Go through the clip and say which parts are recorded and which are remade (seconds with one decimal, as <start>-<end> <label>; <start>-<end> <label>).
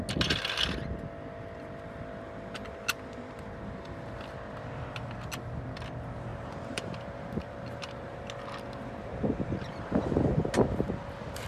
0.0-6.3 recorded; 6.3-8.2 remade; 8.2-11.5 recorded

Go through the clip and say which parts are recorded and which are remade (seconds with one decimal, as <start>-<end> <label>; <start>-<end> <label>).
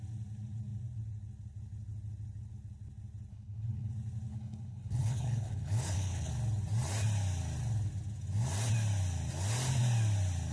0.0-3.3 recorded; 3.3-3.9 remade; 3.9-4.3 recorded; 4.3-6.3 remade; 6.3-10.5 recorded